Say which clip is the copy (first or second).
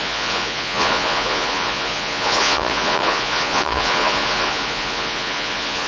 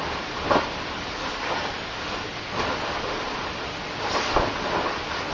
first